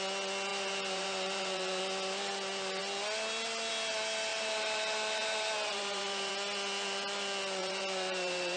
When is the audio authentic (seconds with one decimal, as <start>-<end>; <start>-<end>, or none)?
0.0-0.5; 1.8-4.3; 6.3-7.6